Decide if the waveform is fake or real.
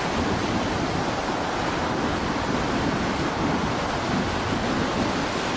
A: real